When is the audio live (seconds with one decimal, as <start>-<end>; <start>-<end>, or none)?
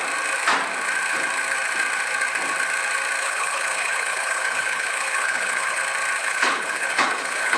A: 0.0-3.2; 5.8-6.2